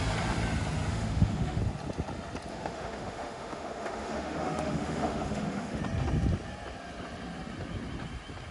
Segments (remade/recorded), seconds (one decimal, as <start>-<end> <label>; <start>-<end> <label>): 0.0-0.9 recorded; 0.9-1.6 remade; 1.6-2.5 recorded; 2.5-5.8 remade; 5.8-8.5 recorded